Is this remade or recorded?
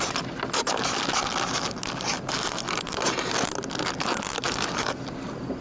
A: recorded